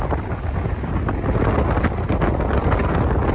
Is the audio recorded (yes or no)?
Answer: yes